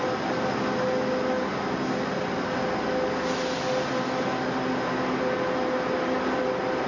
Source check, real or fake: real